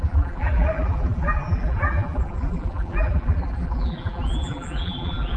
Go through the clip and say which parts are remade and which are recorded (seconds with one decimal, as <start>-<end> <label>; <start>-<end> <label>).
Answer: 0.0-5.4 remade